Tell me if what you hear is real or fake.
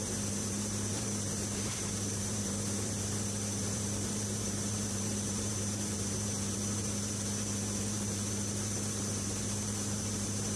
fake